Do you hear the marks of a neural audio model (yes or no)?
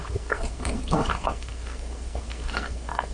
yes